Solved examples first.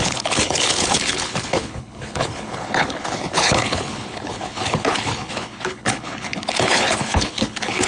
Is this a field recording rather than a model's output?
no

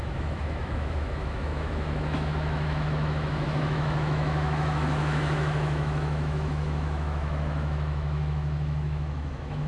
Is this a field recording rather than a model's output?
no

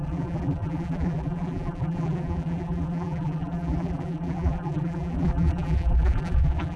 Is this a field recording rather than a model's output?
no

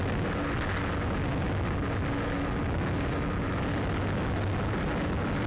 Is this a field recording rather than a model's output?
yes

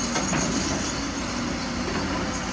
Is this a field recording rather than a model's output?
yes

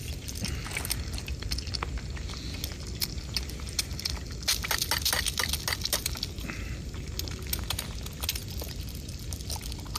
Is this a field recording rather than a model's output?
yes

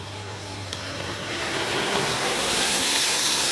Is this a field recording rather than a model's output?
no